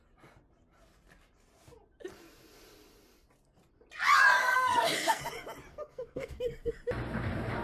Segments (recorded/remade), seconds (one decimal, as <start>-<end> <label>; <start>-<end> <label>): 0.0-4.4 recorded; 4.4-5.2 remade; 5.2-5.7 recorded; 5.7-6.7 remade; 6.7-7.6 recorded